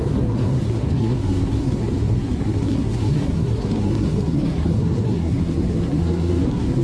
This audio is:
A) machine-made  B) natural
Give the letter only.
A